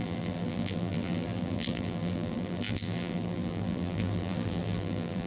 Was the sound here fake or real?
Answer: fake